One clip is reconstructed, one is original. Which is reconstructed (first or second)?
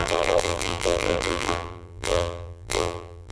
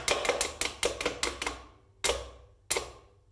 first